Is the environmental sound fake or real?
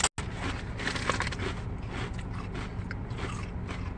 real